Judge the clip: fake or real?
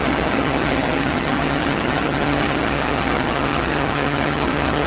fake